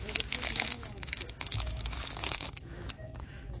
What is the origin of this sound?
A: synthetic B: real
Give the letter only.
A